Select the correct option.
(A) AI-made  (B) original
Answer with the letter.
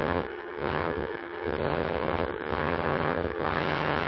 A